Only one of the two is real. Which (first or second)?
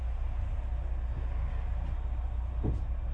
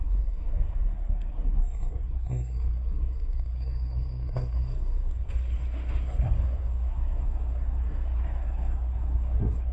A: first